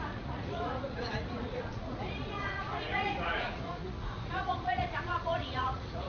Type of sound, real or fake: fake